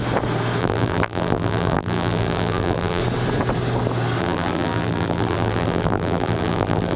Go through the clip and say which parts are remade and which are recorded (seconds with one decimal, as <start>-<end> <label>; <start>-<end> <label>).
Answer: 0.0-0.6 recorded; 0.6-3.0 remade; 3.0-4.2 recorded; 4.2-7.0 remade

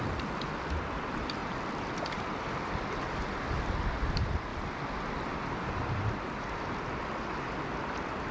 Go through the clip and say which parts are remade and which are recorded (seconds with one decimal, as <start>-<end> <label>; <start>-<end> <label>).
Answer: 0.0-1.4 recorded; 1.4-2.5 remade; 2.5-8.3 recorded

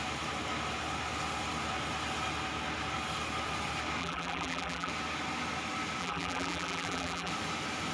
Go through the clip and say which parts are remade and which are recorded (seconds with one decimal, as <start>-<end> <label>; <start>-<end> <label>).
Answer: 0.0-4.0 recorded; 4.0-4.9 remade; 4.9-6.0 recorded; 6.0-7.3 remade; 7.3-7.9 recorded

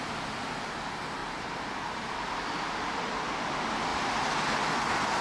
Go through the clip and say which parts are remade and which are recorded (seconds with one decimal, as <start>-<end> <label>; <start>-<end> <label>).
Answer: 0.0-1.2 recorded; 1.2-2.3 remade; 2.3-3.9 recorded; 3.9-4.4 remade; 4.4-5.2 recorded

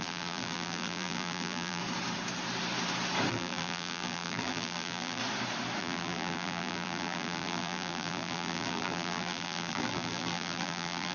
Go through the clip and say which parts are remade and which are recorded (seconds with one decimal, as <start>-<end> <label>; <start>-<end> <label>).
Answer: 0.0-1.8 remade; 1.8-3.3 recorded; 3.3-5.2 remade; 5.2-5.8 recorded; 5.8-11.1 remade